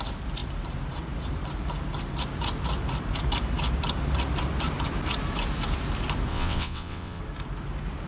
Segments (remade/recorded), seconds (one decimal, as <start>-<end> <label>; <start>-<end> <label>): 0.0-6.3 recorded; 6.3-7.2 remade; 7.2-8.1 recorded